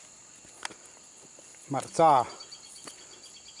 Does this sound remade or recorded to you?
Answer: recorded